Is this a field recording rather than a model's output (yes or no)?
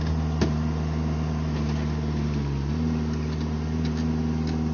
yes